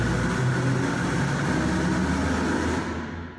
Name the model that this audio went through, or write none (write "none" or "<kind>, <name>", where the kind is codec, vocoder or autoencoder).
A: none